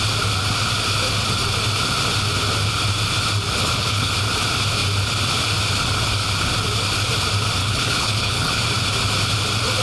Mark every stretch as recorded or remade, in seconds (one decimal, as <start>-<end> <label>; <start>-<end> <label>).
0.0-3.6 recorded; 3.6-4.1 remade; 4.1-7.6 recorded; 7.6-8.6 remade; 8.6-9.8 recorded